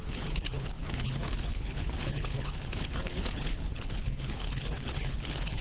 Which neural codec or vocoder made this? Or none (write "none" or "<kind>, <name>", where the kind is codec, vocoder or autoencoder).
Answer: codec, HILCodec